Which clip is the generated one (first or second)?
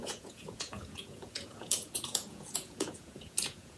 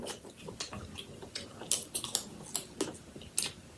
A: first